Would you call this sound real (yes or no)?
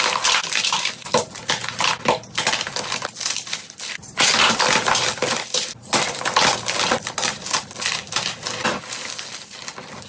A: yes